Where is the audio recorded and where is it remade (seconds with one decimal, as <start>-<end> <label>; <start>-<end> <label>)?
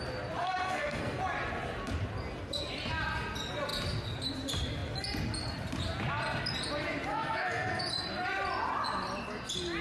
0.0-0.4 recorded; 0.4-1.2 remade; 1.2-7.1 recorded; 7.1-7.8 remade; 7.8-9.8 recorded